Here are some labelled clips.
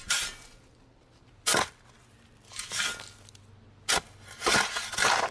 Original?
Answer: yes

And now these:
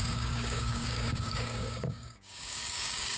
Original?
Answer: no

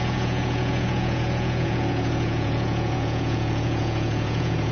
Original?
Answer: no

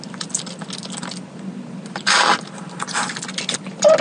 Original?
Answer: yes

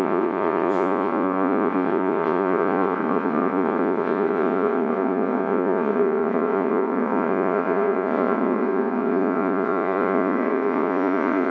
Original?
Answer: no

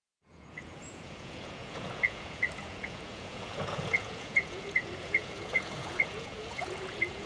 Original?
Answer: no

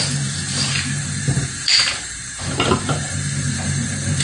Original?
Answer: no